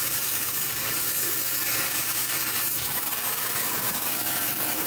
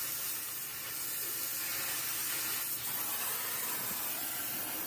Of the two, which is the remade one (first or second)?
first